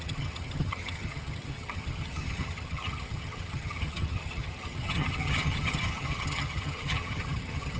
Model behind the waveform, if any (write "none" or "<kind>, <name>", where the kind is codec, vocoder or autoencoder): vocoder, HiFi-GAN